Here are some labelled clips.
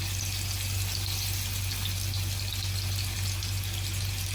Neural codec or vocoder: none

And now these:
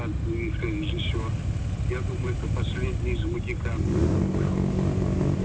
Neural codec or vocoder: none